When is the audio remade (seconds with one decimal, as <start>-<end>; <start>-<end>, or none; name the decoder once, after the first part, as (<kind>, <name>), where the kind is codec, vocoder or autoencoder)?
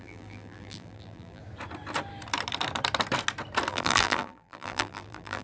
0.0-1.4 (vocoder, BigVGAN v2); 3.7-5.4